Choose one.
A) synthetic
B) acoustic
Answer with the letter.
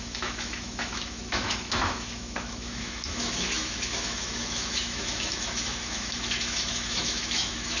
A